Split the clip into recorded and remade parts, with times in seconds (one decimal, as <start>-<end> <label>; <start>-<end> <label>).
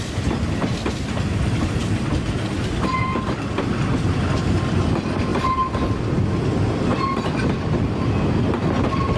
0.0-9.2 recorded